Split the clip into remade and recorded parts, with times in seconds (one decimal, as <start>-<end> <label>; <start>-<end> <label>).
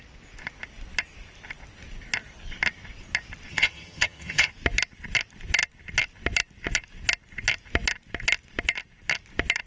0.0-3.5 recorded; 3.5-4.5 remade; 4.5-9.7 recorded